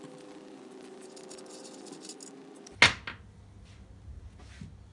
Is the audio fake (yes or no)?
no